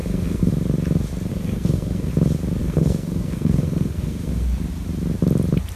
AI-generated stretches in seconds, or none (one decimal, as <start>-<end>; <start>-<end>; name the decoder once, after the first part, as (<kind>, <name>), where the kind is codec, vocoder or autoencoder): 0.0-0.5 (codec, SNAC); 1.3-2.1; 2.6-4.6